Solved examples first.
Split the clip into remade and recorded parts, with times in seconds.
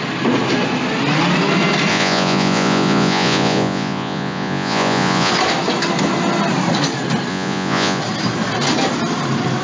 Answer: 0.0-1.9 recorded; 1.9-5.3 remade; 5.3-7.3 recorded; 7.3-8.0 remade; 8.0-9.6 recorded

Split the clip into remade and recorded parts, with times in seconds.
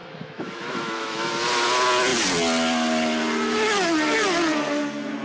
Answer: 0.0-1.3 remade; 1.3-5.2 recorded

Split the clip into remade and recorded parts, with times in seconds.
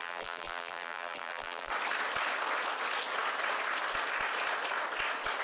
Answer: 0.0-1.7 remade; 1.7-5.4 recorded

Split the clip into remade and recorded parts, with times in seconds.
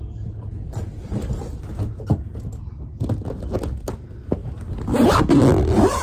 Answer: 0.0-6.0 recorded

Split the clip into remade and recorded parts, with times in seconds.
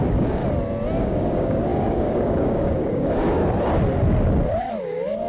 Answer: 0.0-0.4 remade; 0.4-1.0 recorded; 1.0-3.4 remade; 3.4-4.7 recorded; 4.7-5.3 remade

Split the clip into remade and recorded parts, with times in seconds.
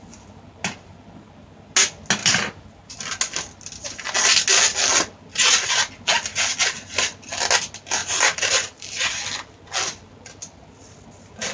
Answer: 0.0-2.2 recorded; 2.2-3.0 remade; 3.0-5.3 recorded; 5.3-5.8 remade; 5.8-8.0 recorded; 8.0-9.2 remade; 9.2-11.5 recorded